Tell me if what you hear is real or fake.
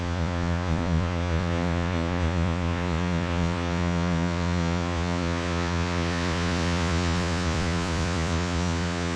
fake